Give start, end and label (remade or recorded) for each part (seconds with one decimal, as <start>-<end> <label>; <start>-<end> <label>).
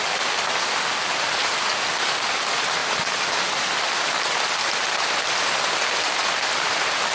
0.0-7.1 recorded